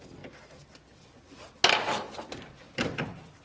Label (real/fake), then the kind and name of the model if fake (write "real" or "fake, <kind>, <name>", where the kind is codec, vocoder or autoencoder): real